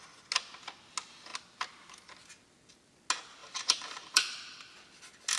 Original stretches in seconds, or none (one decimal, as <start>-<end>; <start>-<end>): 0.0-3.4; 4.8-5.4

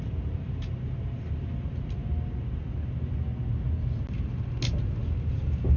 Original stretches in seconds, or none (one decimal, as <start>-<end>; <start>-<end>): 2.0-5.8

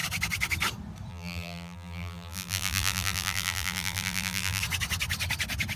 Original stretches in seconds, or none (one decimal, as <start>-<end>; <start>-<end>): 0.0-1.1; 4.6-5.8

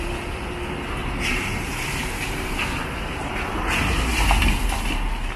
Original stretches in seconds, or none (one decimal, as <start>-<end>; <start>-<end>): 0.0-1.0; 4.2-5.4

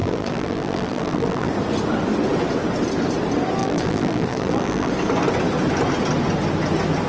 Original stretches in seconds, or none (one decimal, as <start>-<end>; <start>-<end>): 1.5-3.6; 4.9-7.1

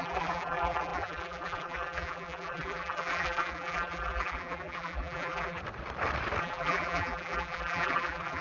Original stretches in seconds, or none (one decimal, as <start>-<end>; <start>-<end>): 5.6-6.4